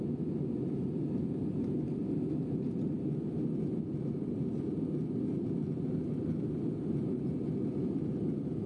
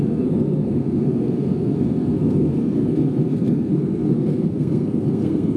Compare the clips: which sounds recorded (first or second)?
first